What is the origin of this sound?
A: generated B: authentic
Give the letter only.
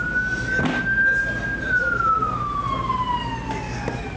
B